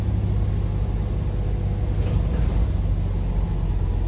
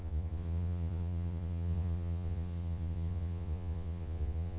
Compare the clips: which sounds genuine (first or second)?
first